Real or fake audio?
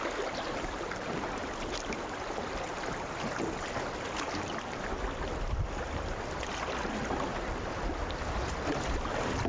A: real